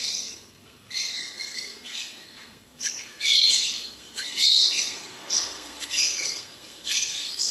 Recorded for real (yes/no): no